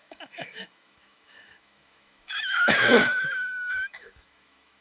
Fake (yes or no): yes